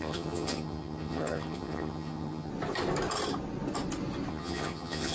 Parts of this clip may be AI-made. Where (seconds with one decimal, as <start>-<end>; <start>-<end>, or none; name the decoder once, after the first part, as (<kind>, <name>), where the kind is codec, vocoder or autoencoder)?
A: 0.0-2.5 (vocoder, HiFi-GAN); 4.3-5.1